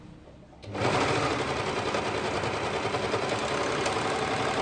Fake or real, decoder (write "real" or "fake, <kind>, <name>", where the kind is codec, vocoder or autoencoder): real